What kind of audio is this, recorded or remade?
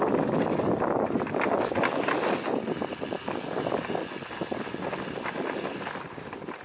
recorded